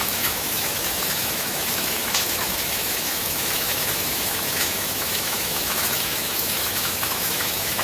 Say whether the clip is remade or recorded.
remade